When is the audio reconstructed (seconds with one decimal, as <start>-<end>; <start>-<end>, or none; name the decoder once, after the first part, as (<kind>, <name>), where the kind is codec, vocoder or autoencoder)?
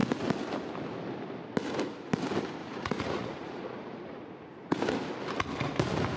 2.6-4.8 (vocoder, Vocos)